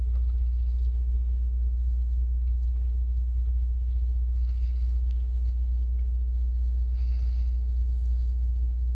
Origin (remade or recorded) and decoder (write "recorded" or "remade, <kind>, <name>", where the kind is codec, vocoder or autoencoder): remade, codec, HILCodec